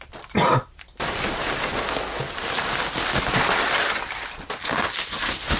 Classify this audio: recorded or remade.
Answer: recorded